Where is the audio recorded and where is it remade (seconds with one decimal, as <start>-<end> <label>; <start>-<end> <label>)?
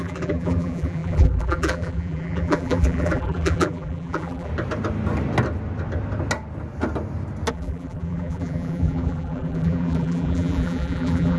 0.0-4.5 remade; 4.5-7.5 recorded; 7.5-11.4 remade